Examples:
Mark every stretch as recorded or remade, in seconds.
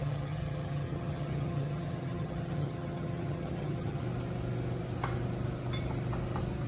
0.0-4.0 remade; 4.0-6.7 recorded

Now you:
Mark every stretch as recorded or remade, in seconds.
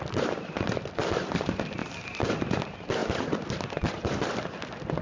0.0-1.8 remade; 1.8-2.6 recorded; 2.6-5.0 remade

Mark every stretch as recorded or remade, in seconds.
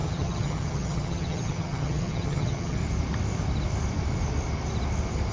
0.0-2.8 remade; 2.8-5.3 recorded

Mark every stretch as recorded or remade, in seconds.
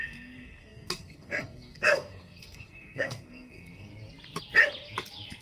0.0-3.9 remade; 3.9-5.4 recorded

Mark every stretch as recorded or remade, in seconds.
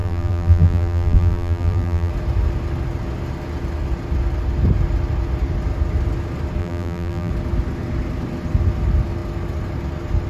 0.0-2.1 remade; 2.1-6.6 recorded; 6.6-7.3 remade; 7.3-10.3 recorded